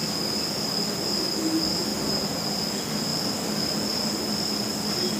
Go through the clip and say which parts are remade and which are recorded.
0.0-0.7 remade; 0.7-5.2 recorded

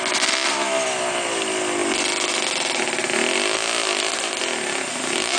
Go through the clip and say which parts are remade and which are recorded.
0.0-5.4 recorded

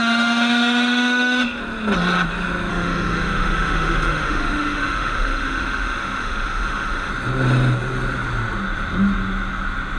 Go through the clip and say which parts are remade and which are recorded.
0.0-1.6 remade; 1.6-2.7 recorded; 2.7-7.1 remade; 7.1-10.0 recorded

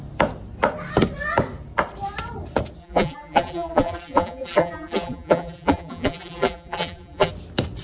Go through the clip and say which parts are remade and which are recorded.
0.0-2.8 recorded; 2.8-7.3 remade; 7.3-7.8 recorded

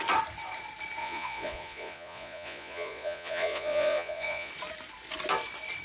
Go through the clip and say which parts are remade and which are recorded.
0.0-1.0 recorded; 1.0-4.5 remade; 4.5-5.8 recorded